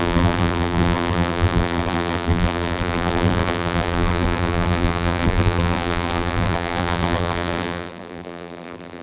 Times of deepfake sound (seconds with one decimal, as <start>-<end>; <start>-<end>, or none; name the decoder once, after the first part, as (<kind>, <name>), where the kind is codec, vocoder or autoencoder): 0.0-9.0 (vocoder, BigVGAN v2)